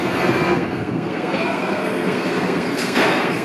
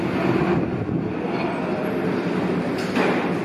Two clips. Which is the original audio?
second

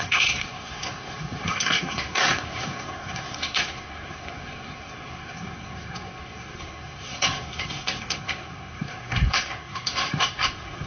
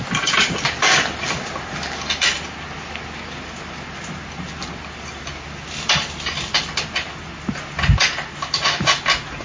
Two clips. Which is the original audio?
second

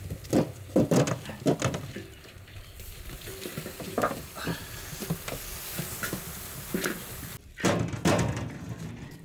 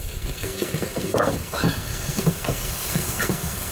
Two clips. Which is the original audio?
first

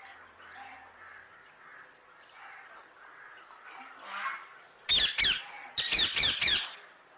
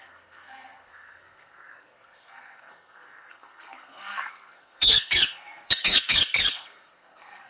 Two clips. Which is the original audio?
first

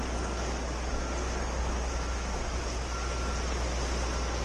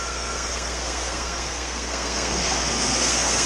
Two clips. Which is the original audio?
first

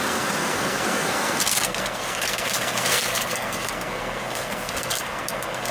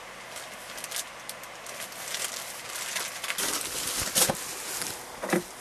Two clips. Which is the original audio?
second